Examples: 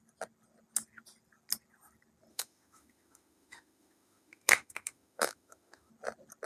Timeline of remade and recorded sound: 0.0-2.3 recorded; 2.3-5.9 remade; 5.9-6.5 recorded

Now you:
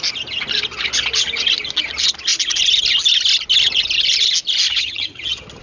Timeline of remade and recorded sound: 0.0-4.7 recorded; 4.7-5.6 remade

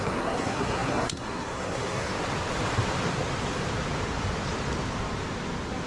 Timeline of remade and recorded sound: 0.0-2.1 remade; 2.1-5.9 recorded

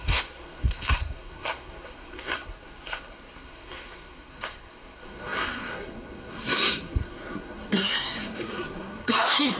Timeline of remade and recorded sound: 0.0-9.6 remade

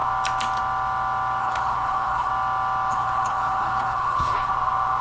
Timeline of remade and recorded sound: 0.0-1.4 recorded; 1.4-2.3 remade; 2.3-2.9 recorded; 2.9-4.5 remade; 4.5-5.0 recorded

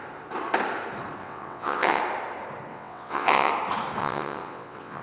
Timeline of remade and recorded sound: 0.0-1.2 recorded; 1.2-2.0 remade; 2.0-2.7 recorded; 2.7-3.5 remade; 3.5-4.0 recorded; 4.0-5.0 remade